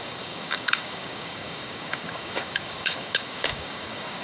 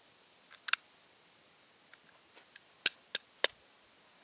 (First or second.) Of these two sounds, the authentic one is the second